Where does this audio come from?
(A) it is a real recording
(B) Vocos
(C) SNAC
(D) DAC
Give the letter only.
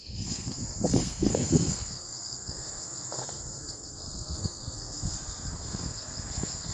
C